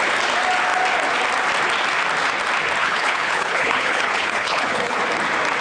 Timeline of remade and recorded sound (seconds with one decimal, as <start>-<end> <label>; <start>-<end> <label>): 0.0-2.8 recorded; 2.8-5.0 remade; 5.0-5.6 recorded